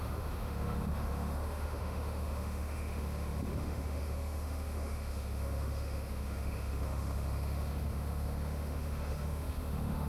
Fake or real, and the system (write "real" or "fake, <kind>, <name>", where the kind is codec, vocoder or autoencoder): fake, autoencoder, DAC-VAE